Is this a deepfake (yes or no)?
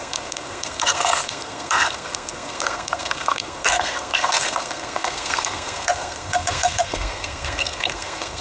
yes